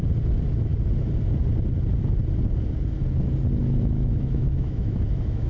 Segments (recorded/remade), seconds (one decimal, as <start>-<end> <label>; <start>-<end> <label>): 0.0-3.6 recorded; 3.6-5.5 remade